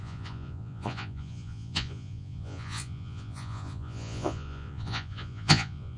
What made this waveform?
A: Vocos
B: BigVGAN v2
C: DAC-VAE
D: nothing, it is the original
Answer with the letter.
A